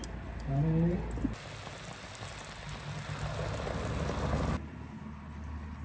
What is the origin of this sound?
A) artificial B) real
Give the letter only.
B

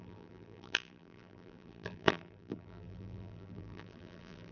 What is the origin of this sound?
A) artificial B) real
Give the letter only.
A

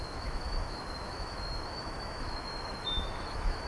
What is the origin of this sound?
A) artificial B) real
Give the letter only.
A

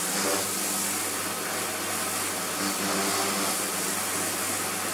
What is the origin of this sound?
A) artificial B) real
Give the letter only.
B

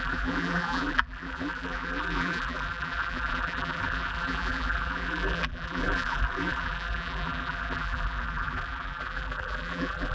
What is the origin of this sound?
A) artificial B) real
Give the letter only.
A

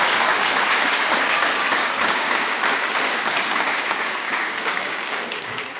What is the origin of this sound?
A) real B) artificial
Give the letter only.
B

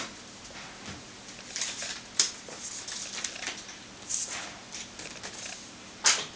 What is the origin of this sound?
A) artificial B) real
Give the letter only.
B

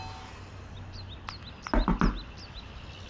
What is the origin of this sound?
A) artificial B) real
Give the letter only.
B